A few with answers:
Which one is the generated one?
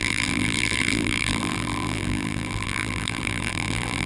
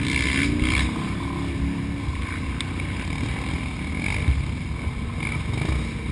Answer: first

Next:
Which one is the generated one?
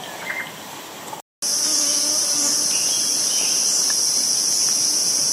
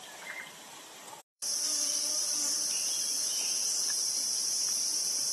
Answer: second